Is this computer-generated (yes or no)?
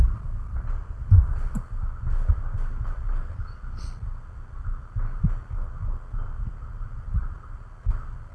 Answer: no